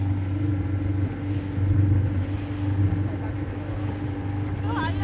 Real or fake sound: real